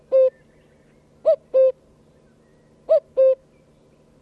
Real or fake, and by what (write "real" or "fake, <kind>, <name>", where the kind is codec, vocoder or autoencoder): real